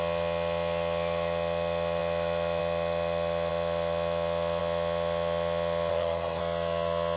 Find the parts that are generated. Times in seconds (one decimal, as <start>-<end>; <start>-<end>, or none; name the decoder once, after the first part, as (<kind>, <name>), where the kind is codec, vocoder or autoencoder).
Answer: 5.9-6.4 (codec, SNAC)